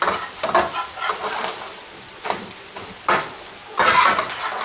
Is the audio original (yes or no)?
yes